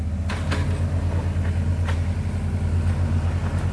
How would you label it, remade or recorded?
recorded